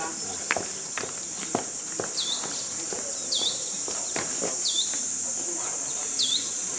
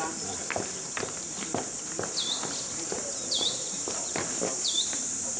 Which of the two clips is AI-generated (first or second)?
second